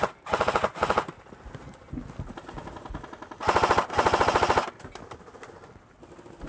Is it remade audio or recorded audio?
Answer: recorded